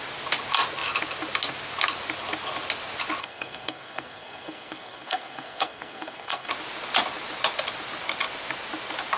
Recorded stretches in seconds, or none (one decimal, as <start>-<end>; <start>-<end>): 0.0-3.2; 6.5-9.2

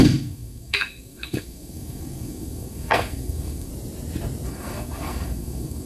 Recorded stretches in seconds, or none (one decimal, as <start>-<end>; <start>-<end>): 3.7-4.5